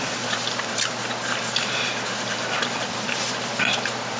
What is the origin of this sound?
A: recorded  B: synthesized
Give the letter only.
B